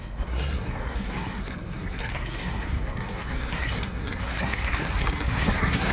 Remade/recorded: remade